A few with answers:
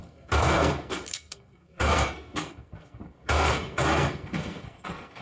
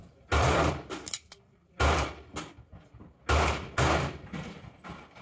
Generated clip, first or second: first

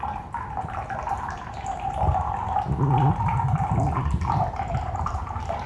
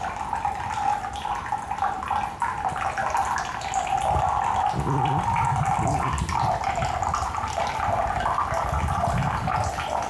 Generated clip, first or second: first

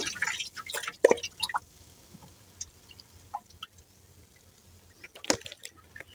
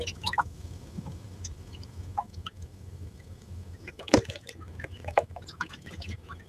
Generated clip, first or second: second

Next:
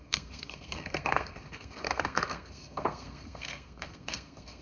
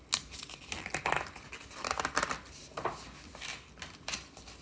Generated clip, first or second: first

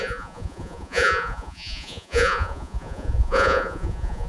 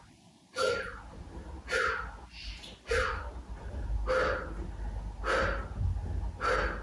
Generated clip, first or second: first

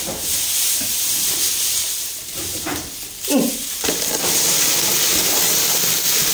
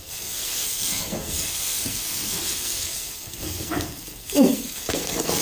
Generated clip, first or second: second